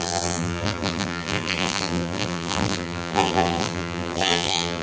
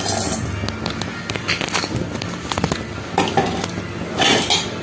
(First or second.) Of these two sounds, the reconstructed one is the first